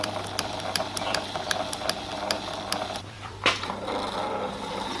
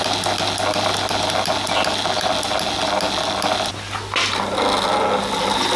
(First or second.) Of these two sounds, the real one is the second